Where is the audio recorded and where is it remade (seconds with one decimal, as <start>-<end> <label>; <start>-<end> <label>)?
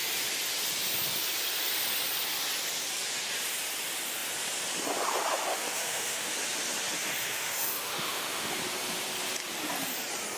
0.0-5.5 recorded; 5.5-6.3 remade; 6.3-7.2 recorded; 7.2-8.6 remade; 8.6-10.4 recorded